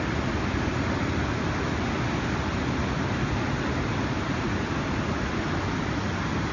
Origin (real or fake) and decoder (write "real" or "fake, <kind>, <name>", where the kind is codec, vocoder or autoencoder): real